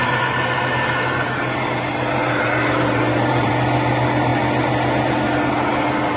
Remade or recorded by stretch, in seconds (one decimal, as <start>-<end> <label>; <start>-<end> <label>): 0.0-2.2 recorded; 2.2-3.5 remade; 3.5-6.2 recorded

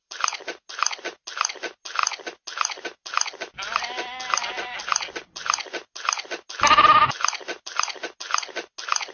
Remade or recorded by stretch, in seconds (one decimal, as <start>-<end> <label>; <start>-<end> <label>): 0.0-9.1 recorded

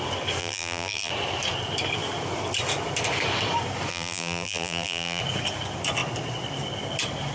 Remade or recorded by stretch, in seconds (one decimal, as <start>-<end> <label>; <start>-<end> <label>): 0.0-0.4 recorded; 0.4-1.1 remade; 1.1-3.9 recorded; 3.9-5.2 remade; 5.2-7.3 recorded

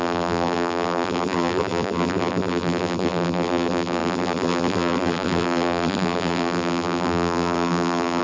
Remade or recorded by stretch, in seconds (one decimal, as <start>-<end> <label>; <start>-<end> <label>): 0.0-8.2 remade

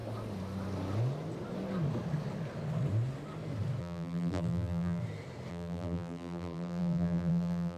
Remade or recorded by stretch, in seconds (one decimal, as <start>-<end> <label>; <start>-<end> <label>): 0.0-3.8 recorded; 3.8-5.0 remade; 5.0-5.5 recorded; 5.5-7.8 remade